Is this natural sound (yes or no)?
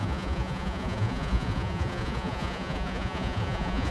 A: no